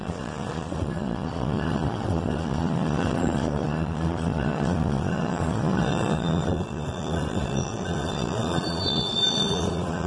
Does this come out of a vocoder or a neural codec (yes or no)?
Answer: yes